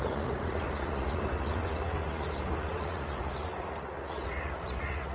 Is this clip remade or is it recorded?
remade